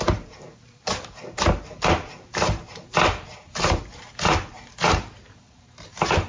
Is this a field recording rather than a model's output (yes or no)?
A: no